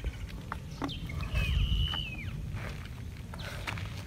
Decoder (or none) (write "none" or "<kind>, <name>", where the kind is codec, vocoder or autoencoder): none